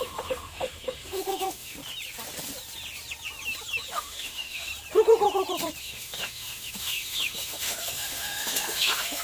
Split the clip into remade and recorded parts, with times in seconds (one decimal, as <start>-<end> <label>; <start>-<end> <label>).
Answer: 0.0-1.8 remade; 1.8-3.9 recorded; 3.9-4.7 remade; 4.7-5.8 recorded; 5.8-9.2 remade